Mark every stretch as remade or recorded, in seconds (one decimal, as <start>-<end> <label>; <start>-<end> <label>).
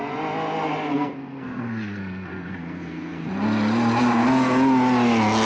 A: 0.0-0.9 recorded; 0.9-3.3 remade; 3.3-5.5 recorded